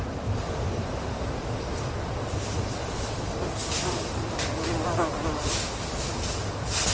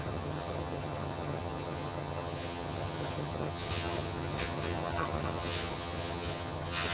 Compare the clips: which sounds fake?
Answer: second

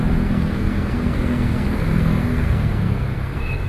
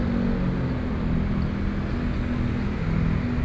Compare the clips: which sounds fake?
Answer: first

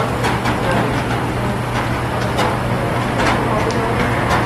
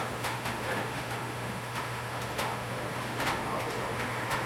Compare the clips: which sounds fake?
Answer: second